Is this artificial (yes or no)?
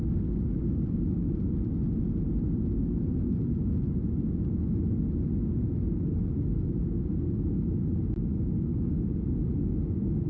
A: no